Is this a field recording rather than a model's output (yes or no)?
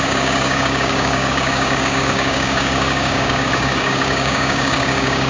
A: no